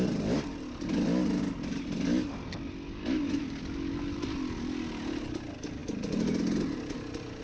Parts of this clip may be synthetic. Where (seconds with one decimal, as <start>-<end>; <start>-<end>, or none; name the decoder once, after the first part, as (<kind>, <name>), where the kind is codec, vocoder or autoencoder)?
none